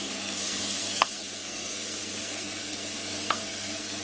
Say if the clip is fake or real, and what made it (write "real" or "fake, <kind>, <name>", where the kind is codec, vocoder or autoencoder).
fake, codec, SNAC